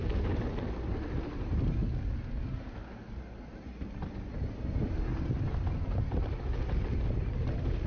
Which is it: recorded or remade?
recorded